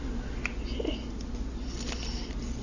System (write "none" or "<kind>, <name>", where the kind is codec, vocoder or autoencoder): none